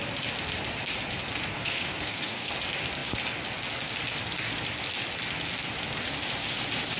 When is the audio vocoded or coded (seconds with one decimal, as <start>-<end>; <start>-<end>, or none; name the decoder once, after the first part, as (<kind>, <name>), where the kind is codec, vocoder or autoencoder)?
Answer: 1.5-2.5 (codec, SNAC)